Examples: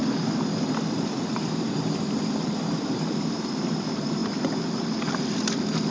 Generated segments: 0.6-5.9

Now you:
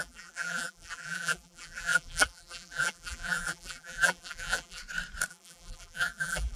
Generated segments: 0.0-4.8; 5.3-6.6

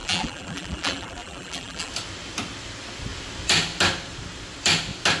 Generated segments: 0.0-1.9